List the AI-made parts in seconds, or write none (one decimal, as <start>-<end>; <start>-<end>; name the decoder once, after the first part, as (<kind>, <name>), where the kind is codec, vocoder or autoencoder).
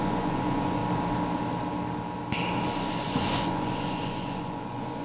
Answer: 0.0-0.8 (vocoder, Vocos); 2.7-5.0